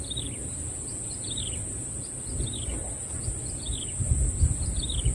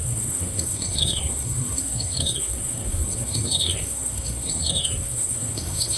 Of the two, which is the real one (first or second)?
first